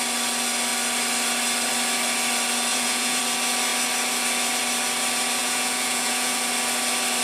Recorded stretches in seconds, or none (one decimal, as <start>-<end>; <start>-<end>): 0.0-2.7; 3.2-5.4; 6.3-7.2